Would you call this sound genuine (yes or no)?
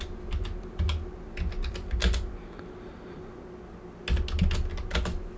yes